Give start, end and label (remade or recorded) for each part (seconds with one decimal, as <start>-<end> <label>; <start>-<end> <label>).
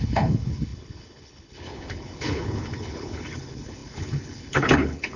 0.0-5.2 remade